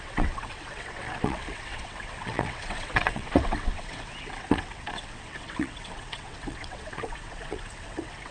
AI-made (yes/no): yes